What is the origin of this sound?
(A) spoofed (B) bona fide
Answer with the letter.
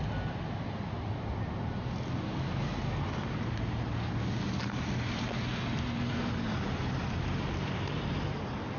B